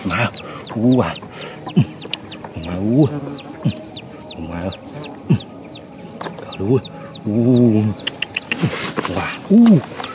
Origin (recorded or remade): recorded